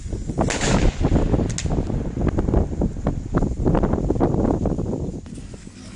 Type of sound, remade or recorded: recorded